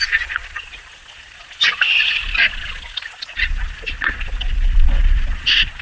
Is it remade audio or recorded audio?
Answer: remade